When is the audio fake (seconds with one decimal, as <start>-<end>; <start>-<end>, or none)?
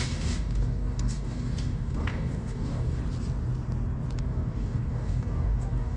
0.0-3.0; 4.2-6.0